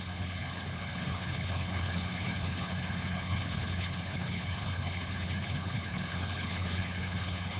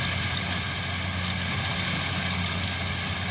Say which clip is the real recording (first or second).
second